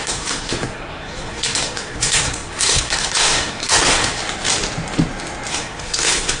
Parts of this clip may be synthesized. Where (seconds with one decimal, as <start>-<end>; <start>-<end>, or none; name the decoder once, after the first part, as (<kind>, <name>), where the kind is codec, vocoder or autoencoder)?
0.0-4.2 (codec, SNAC); 5.5-6.4